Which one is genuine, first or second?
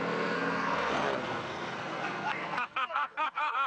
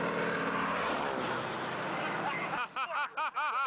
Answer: second